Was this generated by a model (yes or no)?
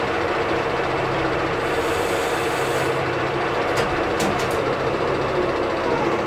yes